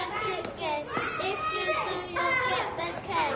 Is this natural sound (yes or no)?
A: yes